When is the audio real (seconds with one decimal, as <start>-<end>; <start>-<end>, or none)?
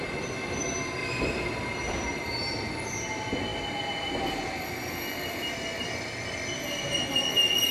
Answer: 0.0-1.0; 2.5-7.7